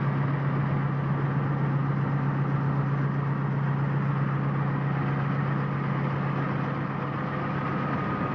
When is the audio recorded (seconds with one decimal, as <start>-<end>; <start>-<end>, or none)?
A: 0.0-8.3